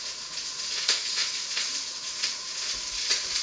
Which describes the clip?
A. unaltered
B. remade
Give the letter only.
B